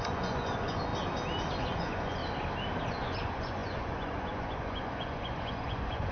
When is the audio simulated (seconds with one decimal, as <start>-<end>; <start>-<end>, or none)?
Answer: 0.0-0.9; 1.6-2.2; 2.9-6.1